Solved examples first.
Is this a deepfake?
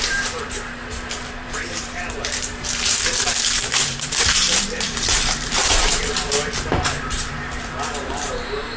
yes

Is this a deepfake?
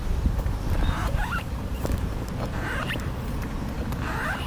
yes